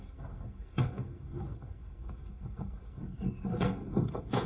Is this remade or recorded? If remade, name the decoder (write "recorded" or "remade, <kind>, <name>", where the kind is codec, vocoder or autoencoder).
remade, codec, SNAC